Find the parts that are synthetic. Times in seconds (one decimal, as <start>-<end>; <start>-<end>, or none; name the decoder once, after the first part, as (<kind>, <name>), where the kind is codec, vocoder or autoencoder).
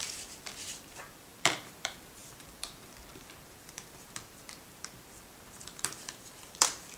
0.7-7.0 (vocoder, BigVGAN v2)